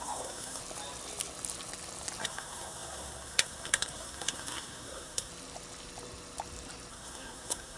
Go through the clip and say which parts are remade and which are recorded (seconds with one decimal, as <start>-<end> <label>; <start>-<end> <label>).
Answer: 0.0-0.6 remade; 0.6-2.2 recorded; 2.2-5.3 remade; 5.3-6.9 recorded; 6.9-7.8 remade